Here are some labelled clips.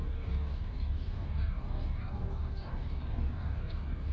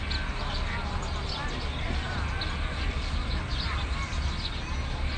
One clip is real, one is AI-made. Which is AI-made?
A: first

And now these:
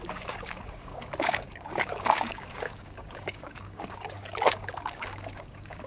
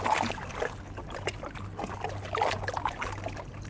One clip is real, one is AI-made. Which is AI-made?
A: first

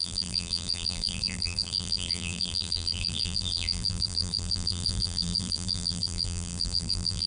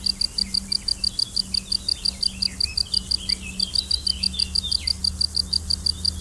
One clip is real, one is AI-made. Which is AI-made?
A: first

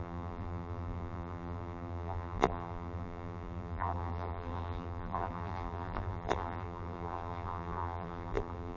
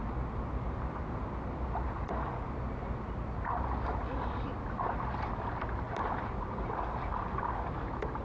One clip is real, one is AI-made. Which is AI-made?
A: first